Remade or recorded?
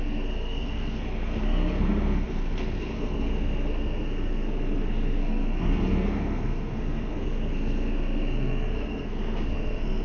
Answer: remade